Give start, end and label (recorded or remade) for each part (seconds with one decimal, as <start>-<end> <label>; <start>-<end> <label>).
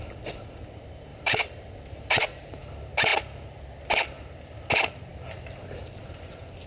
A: 0.0-1.1 recorded; 1.1-2.7 remade; 2.7-6.7 recorded